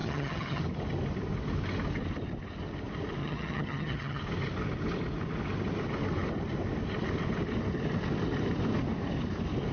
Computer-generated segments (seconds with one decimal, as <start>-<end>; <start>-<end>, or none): 0.0-0.6; 3.2-4.2